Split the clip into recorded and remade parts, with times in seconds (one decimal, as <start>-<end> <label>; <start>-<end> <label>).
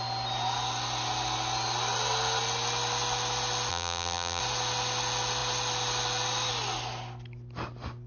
0.0-3.7 recorded; 3.7-4.4 remade; 4.4-8.1 recorded